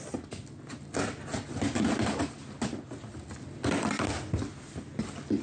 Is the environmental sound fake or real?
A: real